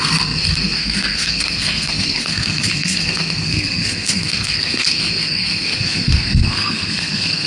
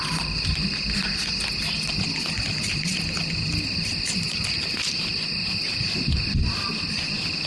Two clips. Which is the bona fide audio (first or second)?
second